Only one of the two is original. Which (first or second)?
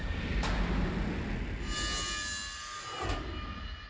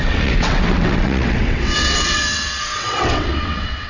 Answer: first